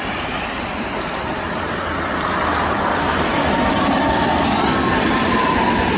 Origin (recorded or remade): remade